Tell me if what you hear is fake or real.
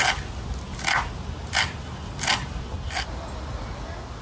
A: real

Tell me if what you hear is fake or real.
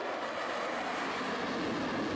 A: real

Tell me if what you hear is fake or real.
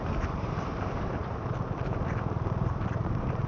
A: fake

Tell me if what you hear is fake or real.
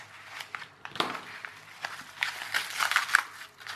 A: fake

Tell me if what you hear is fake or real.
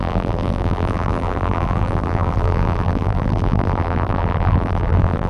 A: fake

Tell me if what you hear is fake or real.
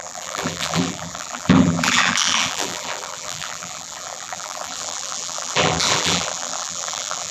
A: fake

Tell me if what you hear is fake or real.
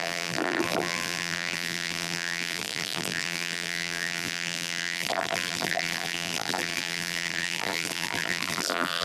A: fake